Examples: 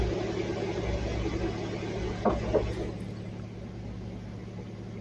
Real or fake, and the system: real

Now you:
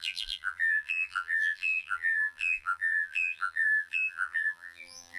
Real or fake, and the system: fake, vocoder, BigVGAN v2